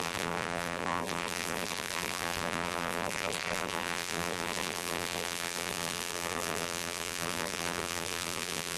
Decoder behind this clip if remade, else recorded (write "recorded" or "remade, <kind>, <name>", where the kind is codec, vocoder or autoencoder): remade, vocoder, BigVGAN v2